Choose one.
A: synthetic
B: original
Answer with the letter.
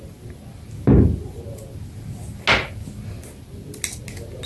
B